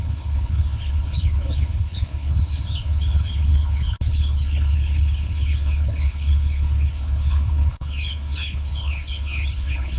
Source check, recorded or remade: remade